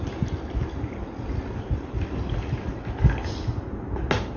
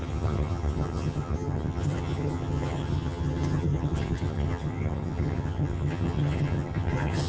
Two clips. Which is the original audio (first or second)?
first